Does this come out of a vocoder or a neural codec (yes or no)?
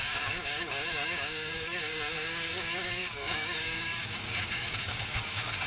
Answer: yes